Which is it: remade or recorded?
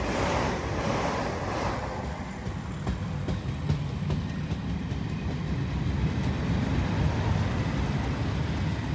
recorded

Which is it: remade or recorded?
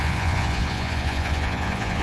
remade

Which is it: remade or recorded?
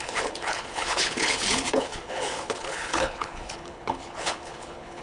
remade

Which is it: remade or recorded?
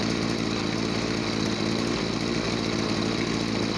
recorded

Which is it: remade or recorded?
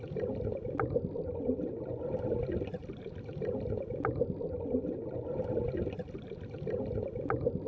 recorded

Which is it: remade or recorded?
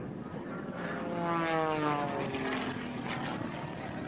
recorded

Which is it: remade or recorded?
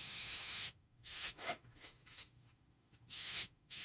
remade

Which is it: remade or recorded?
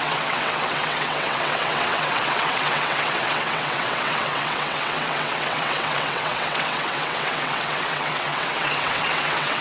remade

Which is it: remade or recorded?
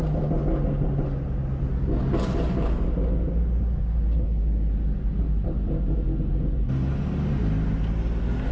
recorded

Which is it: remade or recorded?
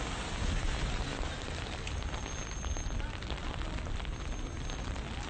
recorded